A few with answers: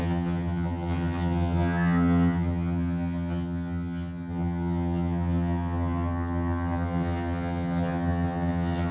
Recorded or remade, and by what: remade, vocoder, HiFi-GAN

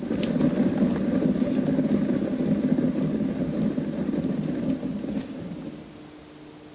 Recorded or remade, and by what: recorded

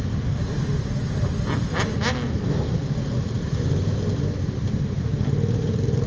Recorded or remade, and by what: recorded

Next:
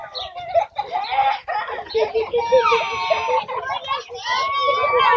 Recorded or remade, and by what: recorded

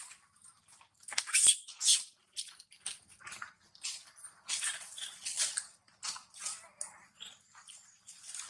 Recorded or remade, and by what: recorded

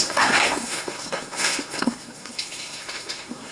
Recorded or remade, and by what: remade, codec, SNAC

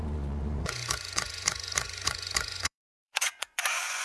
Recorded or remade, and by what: remade, vocoder, Vocos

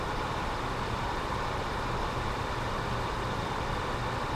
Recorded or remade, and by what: recorded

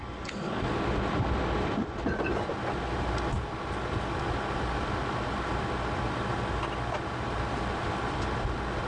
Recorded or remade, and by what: recorded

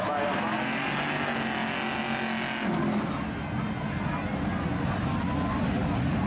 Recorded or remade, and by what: recorded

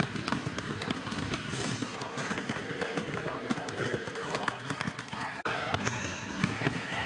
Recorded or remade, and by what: remade, codec, SNAC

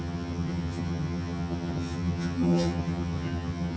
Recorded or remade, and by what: remade, vocoder, HiFi-GAN